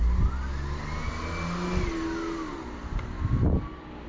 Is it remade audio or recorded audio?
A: recorded